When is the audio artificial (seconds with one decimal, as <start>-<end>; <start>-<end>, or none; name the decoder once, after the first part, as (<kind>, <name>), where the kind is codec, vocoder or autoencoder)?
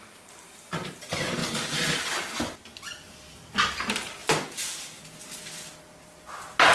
0.0-1.4 (vocoder, BigVGAN v2); 2.0-2.7; 3.8-4.2